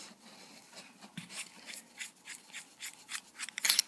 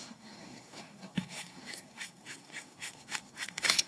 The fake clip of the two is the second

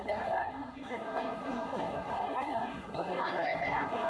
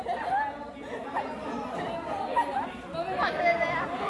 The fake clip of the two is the first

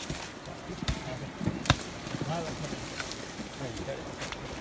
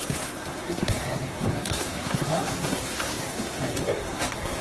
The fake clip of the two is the second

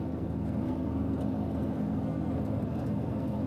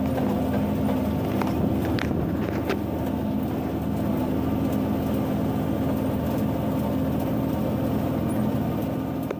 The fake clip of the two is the first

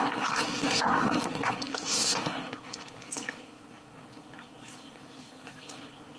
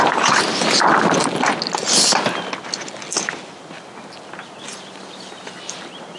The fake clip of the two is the first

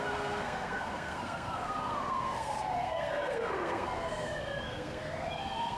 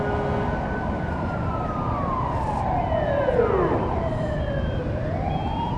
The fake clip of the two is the first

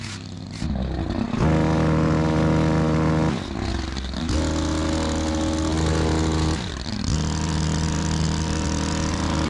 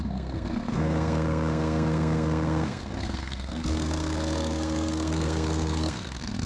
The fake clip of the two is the second